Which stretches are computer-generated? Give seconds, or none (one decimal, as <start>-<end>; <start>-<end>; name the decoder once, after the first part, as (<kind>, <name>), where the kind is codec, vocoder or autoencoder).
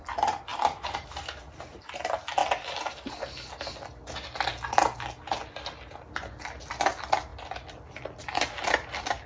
0.5-1.4 (vocoder, BigVGAN v2)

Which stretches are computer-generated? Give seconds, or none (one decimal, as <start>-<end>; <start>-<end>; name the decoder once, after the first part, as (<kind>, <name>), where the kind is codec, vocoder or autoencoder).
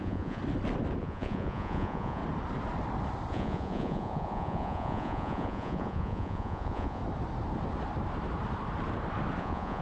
0.0-0.4 (vocoder, Vocos); 1.0-2.2; 3.3-7.0; 9.4-9.8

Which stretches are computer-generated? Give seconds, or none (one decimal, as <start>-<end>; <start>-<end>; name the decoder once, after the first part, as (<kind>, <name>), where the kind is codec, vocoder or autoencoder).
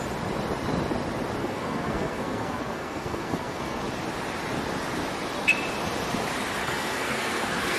1.4-3.8 (codec, SNAC); 6.6-7.8